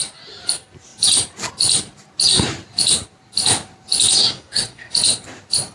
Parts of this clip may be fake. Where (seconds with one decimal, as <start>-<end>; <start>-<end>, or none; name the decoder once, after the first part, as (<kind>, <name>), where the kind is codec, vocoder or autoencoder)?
4.2-4.9 (codec, SNAC)